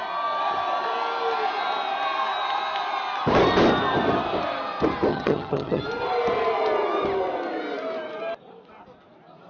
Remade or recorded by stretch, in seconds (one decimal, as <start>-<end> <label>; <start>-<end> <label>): 0.0-5.1 recorded; 5.1-5.8 remade; 5.8-9.5 recorded